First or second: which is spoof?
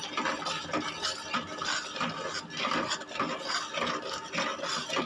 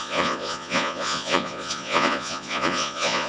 second